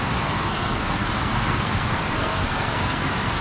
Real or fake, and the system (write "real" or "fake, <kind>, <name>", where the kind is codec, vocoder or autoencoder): fake, codec, SNAC